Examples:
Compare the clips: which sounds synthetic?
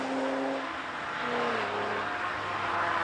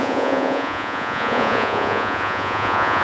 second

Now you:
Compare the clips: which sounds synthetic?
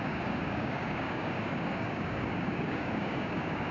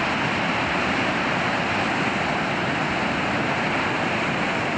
first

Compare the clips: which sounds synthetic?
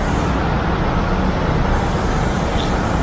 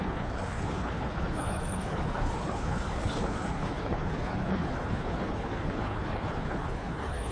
second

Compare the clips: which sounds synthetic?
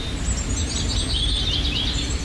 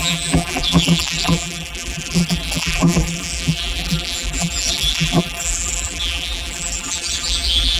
second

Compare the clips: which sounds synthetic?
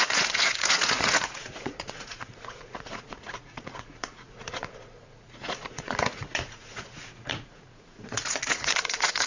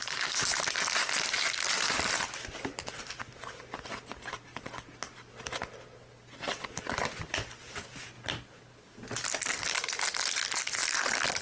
first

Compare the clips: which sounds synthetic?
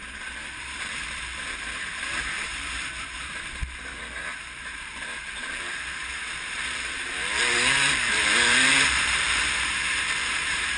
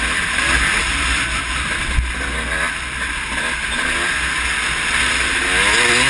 first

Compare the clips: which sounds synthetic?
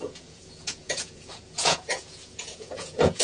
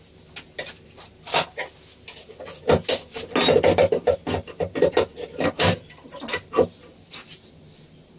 first